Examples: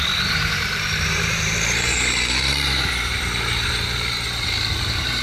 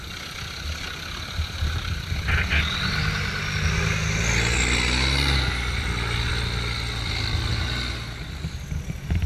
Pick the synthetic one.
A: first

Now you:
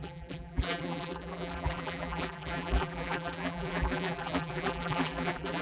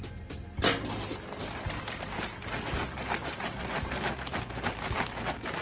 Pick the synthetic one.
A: first